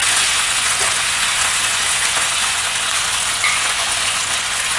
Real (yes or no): no